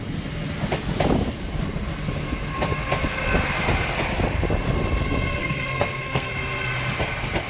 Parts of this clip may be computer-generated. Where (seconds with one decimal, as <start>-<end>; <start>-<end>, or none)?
5.4-6.3